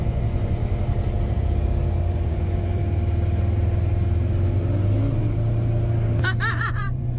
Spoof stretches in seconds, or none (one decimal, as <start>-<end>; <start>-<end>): 0.0-0.6; 2.1-2.8; 6.5-7.2